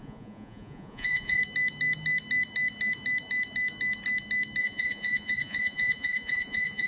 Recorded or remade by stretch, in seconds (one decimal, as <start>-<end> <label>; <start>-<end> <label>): 0.0-1.4 remade; 1.4-4.6 recorded; 4.6-6.9 remade